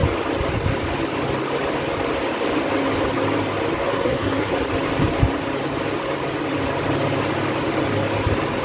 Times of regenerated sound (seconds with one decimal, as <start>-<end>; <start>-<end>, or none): 3.9-4.6